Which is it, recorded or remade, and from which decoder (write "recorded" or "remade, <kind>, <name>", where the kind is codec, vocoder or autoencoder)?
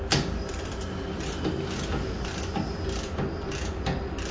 recorded